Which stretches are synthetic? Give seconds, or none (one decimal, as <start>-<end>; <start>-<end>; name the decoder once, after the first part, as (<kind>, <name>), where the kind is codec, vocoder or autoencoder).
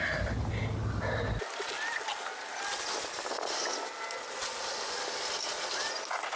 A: none